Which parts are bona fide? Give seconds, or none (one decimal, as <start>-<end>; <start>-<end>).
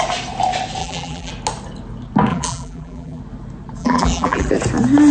0.0-0.8; 1.3-2.3; 3.2-3.8; 4.5-5.1